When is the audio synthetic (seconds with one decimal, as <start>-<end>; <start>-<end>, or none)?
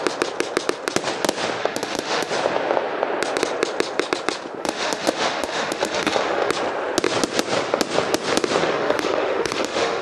1.6-2.3; 4.6-6.5; 8.6-10.0